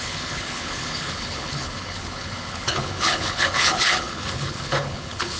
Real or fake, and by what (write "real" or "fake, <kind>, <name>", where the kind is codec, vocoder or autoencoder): fake, codec, HILCodec